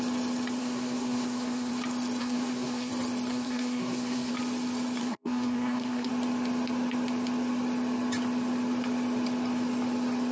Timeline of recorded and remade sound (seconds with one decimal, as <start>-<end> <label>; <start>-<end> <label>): 0.0-0.6 recorded; 0.6-1.7 remade; 1.7-2.2 recorded; 2.2-2.9 remade; 2.9-3.3 recorded; 3.3-4.3 remade; 4.3-5.0 recorded; 5.0-6.1 remade; 6.1-10.3 recorded